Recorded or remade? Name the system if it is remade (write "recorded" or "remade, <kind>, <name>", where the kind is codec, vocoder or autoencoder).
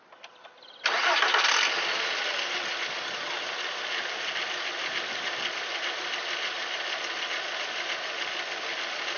recorded